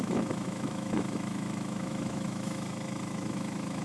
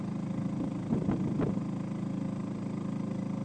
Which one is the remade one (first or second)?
first